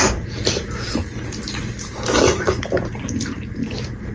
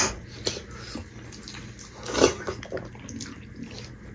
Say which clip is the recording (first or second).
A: second